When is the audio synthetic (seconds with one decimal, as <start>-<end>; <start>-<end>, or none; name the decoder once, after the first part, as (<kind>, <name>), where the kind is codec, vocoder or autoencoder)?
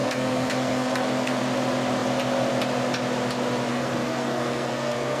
0.0-1.4 (codec, SNAC); 3.7-5.2